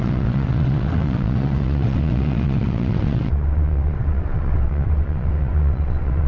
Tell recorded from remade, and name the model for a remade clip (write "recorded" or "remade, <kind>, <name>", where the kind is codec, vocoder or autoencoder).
remade, vocoder, WaveNeXt